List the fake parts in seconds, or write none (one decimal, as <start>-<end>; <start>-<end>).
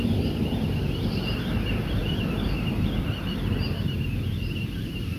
none